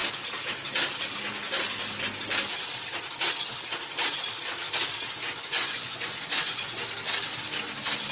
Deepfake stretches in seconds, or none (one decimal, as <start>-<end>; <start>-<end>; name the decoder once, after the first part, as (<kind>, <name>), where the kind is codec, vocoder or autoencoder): 5.2-6.8 (vocoder, Vocos)